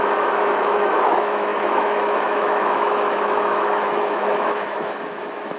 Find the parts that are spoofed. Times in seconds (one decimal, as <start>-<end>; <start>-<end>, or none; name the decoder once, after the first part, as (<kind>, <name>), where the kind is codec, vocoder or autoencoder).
0.0-5.6 (autoencoder, DAC-VAE)